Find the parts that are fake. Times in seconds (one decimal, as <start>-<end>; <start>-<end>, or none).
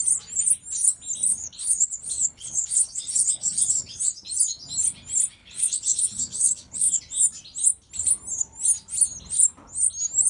1.3-4.0; 5.4-7.0